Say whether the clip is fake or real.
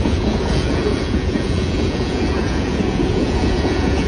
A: fake